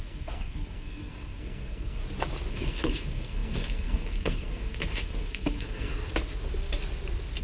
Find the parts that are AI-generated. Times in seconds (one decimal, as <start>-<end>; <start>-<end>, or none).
0.0-2.0; 2.5-5.9